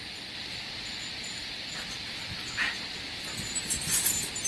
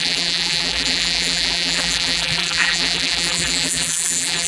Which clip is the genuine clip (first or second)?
first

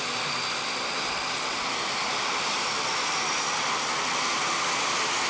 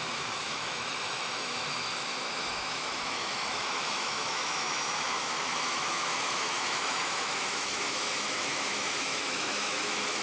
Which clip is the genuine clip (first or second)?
first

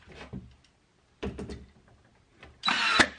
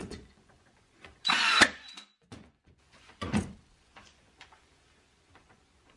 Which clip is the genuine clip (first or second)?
first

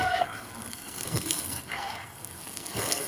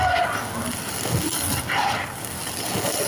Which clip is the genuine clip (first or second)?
second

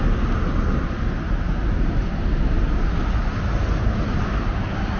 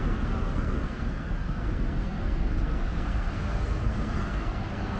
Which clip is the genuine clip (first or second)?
first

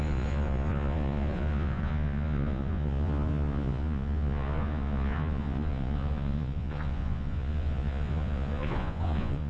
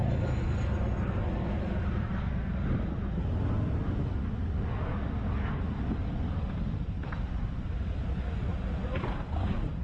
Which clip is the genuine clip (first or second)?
second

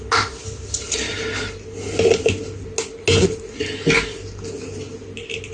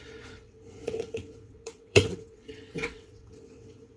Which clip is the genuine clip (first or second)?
first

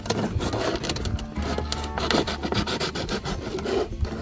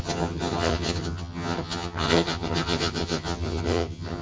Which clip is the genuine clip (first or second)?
first